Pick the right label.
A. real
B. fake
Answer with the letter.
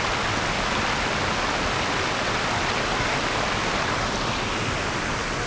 A